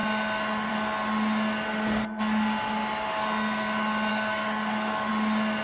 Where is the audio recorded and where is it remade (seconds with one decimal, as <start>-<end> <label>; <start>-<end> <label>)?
0.0-4.1 recorded; 4.1-5.1 remade; 5.1-5.6 recorded